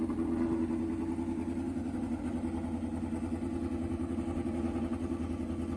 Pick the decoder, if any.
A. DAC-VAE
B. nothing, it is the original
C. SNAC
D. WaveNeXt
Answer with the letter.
B